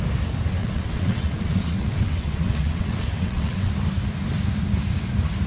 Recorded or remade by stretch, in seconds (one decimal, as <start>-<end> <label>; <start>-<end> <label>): 0.0-0.6 recorded; 0.6-3.7 remade; 3.7-5.5 recorded